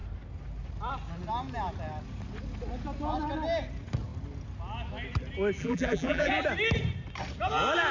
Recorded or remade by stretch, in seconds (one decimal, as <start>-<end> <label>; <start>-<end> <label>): 0.0-5.6 recorded; 5.6-6.3 remade; 6.3-7.9 recorded